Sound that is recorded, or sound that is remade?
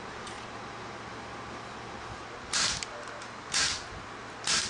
recorded